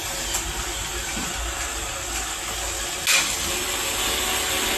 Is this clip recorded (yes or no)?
yes